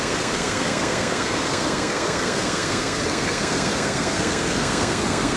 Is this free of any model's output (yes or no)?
no